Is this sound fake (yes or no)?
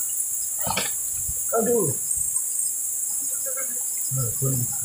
no